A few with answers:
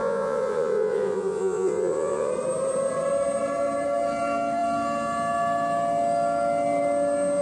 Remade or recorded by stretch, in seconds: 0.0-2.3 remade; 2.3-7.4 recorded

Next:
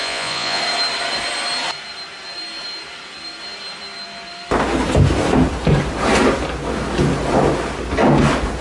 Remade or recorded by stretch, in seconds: 0.0-0.6 remade; 0.6-8.6 recorded